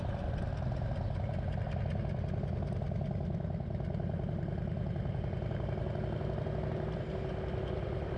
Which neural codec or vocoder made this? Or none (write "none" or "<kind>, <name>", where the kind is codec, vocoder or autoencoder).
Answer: none